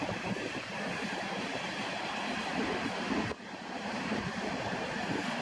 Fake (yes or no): yes